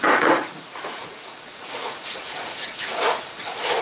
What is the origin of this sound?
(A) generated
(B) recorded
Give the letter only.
A